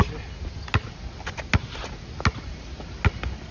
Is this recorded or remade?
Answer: recorded